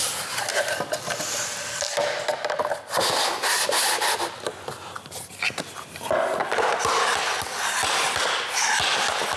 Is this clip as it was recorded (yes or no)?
yes